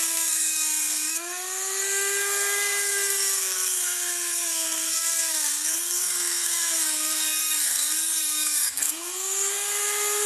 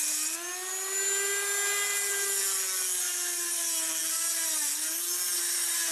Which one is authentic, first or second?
second